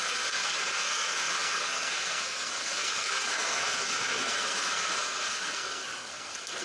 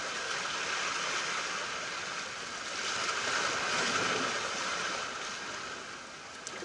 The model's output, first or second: first